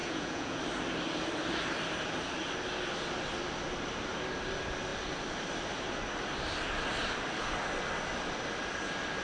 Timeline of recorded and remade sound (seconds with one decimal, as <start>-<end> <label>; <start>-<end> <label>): 0.0-0.6 remade; 0.6-9.2 recorded